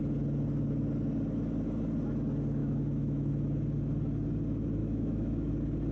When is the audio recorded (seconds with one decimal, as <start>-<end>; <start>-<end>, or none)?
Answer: 0.0-2.6; 3.3-4.8; 5.5-5.9